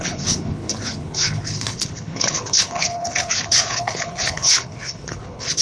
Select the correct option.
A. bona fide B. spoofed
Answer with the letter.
B